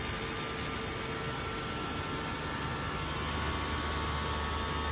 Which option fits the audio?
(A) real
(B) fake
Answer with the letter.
A